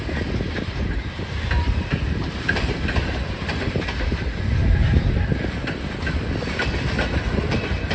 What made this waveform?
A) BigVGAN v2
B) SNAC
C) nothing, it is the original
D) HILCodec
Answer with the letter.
A